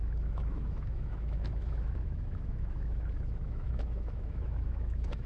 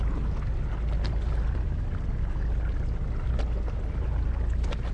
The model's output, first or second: first